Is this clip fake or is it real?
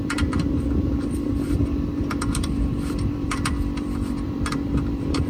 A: fake